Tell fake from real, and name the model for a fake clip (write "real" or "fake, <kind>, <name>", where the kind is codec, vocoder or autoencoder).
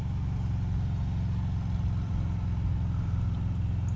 real